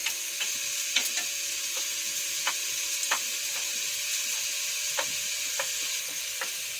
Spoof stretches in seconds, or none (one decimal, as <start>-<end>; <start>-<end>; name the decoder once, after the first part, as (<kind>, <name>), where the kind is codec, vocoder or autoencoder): none